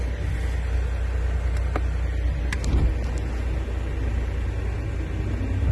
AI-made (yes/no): no